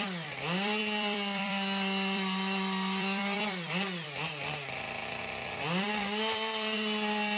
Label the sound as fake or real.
fake